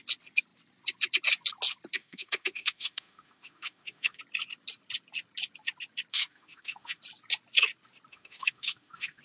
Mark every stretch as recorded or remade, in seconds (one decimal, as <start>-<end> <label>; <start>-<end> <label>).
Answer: 0.0-2.0 recorded; 2.0-4.2 remade; 4.2-6.1 recorded; 6.1-7.0 remade; 7.0-8.1 recorded; 8.1-9.2 remade